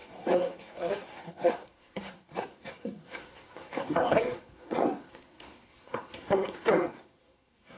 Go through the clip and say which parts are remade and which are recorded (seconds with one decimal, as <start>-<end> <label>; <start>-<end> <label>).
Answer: 0.0-7.8 remade